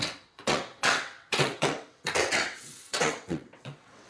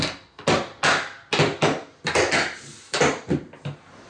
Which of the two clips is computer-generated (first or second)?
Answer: first